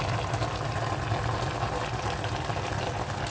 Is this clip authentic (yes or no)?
yes